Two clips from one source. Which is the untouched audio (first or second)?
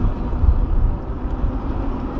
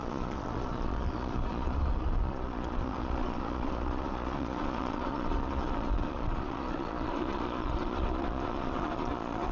first